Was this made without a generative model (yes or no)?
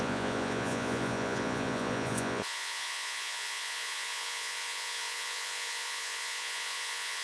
no